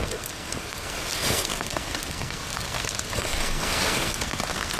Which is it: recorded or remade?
remade